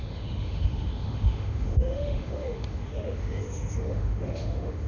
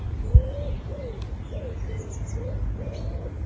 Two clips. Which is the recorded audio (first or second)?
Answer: second